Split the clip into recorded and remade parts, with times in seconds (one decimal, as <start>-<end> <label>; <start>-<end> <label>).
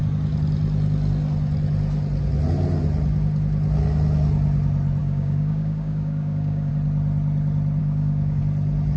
0.0-5.0 recorded; 5.0-6.7 remade; 6.7-7.8 recorded; 7.8-8.4 remade; 8.4-9.0 recorded